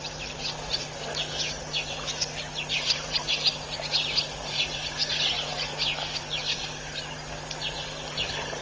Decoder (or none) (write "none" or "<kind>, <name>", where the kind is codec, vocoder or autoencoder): none